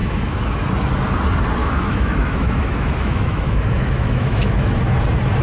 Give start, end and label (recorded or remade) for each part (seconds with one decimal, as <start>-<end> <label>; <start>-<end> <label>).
0.0-0.6 remade; 0.6-1.6 recorded; 1.6-4.8 remade; 4.8-5.4 recorded